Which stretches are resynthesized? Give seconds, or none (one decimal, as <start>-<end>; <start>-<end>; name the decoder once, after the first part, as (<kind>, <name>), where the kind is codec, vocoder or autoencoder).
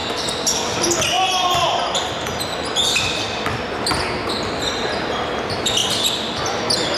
none